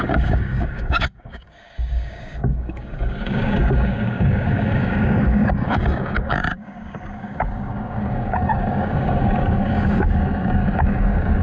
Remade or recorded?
remade